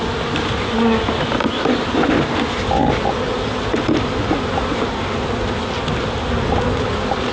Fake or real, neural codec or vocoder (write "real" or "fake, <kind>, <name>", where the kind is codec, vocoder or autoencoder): real